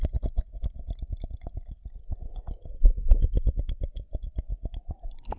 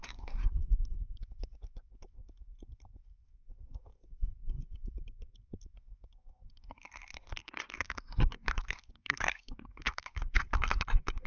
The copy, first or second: second